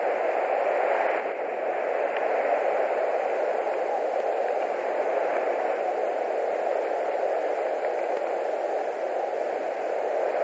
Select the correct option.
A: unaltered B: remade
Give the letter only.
A